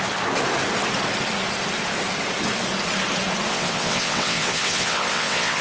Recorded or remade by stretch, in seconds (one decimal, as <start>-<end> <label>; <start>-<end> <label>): 0.0-3.5 recorded; 3.5-5.6 remade